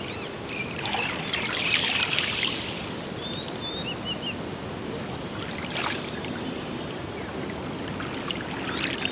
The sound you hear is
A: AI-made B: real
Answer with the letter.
B